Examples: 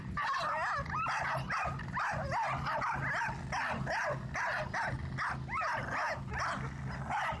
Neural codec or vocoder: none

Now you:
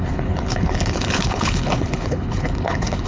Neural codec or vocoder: codec, HILCodec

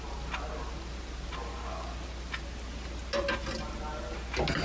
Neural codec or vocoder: none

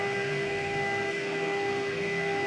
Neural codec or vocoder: codec, SNAC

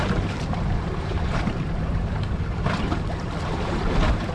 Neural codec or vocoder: vocoder, BigVGAN v2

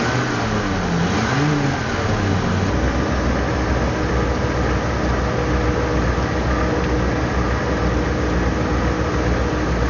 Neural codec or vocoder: none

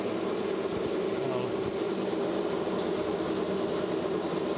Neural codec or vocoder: none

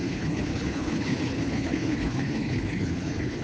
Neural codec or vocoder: codec, HILCodec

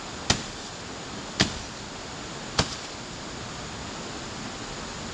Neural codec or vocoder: none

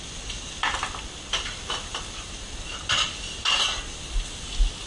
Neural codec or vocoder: none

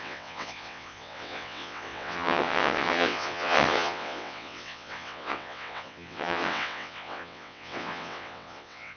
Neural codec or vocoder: vocoder, WaveNeXt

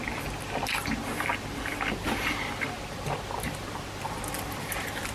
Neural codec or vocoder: none